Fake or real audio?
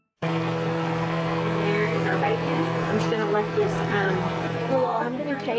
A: fake